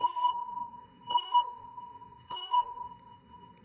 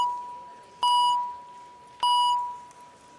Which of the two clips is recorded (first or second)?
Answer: second